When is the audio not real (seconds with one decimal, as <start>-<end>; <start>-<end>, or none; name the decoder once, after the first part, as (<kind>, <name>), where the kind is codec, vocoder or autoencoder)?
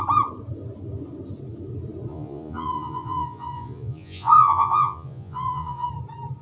2.1-5.9 (vocoder, Vocos)